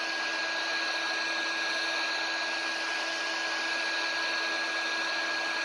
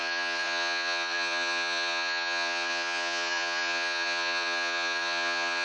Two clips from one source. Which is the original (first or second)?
first